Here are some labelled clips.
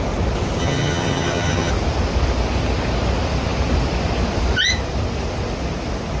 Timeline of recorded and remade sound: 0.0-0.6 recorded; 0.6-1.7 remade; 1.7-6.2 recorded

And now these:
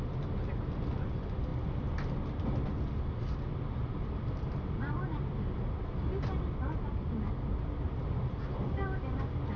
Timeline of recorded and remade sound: 0.0-9.6 recorded

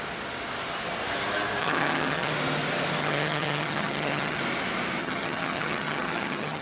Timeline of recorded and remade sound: 0.0-1.6 recorded; 1.6-2.3 remade; 2.3-3.0 recorded; 3.0-4.4 remade; 4.4-5.0 recorded; 5.0-6.6 remade

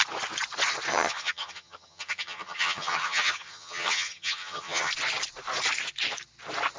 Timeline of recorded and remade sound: 0.0-0.9 recorded; 0.9-4.9 remade; 4.9-6.8 recorded

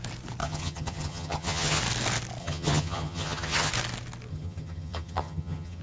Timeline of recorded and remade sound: 0.0-0.4 recorded; 0.4-1.8 remade; 1.8-2.4 recorded; 2.4-3.7 remade; 3.7-4.3 recorded; 4.3-5.8 remade

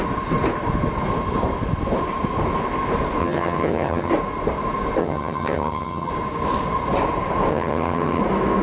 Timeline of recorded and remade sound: 0.0-3.2 recorded; 3.2-4.1 remade; 4.1-5.0 recorded; 5.0-6.1 remade; 6.1-7.5 recorded; 7.5-8.2 remade; 8.2-8.6 recorded

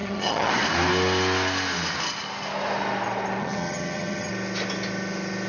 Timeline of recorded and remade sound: 0.0-0.5 remade; 0.5-3.4 recorded; 3.4-4.3 remade; 4.3-5.5 recorded

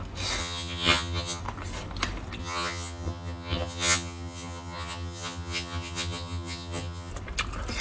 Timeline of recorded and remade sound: 0.0-0.4 recorded; 0.4-1.4 remade; 1.4-2.4 recorded; 2.4-7.1 remade; 7.1-7.8 recorded